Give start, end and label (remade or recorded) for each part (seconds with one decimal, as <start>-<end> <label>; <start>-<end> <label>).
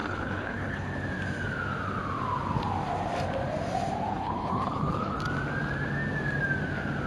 0.0-0.9 remade; 0.9-4.1 recorded; 4.1-5.2 remade; 5.2-7.1 recorded